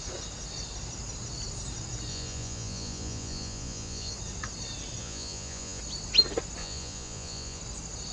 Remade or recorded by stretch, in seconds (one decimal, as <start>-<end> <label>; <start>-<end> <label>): 0.0-2.1 recorded; 2.1-4.1 remade; 4.1-5.0 recorded; 5.0-5.8 remade; 5.8-6.6 recorded; 6.6-7.6 remade; 7.6-8.1 recorded